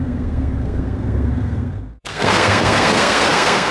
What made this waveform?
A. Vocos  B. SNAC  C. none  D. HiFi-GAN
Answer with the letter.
B